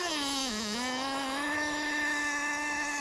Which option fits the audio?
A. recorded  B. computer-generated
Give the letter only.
B